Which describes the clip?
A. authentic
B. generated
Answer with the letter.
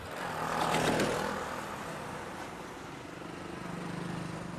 A